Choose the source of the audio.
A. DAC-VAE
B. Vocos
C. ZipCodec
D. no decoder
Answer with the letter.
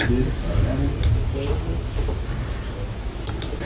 D